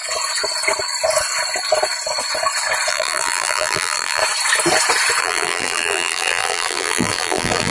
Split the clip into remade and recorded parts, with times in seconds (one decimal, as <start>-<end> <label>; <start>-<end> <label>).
0.0-2.9 recorded; 2.9-4.2 remade; 4.2-5.2 recorded; 5.2-7.7 remade